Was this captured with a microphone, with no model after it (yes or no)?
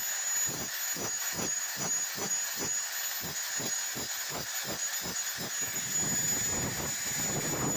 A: yes